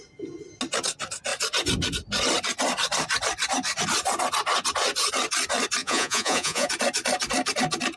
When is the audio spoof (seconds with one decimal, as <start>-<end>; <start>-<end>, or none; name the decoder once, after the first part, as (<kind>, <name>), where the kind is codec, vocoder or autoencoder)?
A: 5.8-6.7 (vocoder, Vocos)